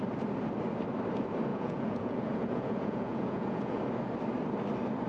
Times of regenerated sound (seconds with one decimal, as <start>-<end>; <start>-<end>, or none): 1.5-3.8